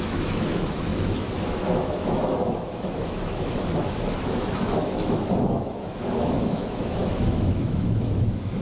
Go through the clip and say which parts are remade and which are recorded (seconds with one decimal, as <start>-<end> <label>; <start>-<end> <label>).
0.0-8.6 remade